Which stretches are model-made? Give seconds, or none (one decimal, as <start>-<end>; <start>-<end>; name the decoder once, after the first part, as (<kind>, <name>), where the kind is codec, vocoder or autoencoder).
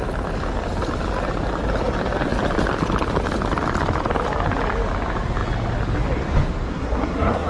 6.7-7.5 (codec, SNAC)